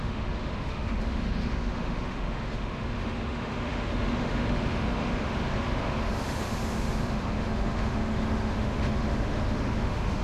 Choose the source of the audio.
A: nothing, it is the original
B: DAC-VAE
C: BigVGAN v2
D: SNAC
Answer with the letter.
B